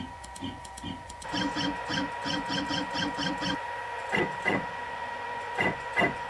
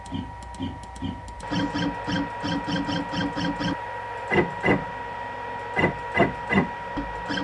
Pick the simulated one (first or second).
first